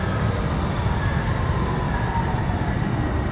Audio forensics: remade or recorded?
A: recorded